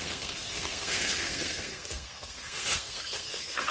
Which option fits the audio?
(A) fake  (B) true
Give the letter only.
A